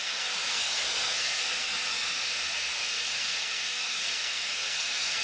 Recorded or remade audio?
remade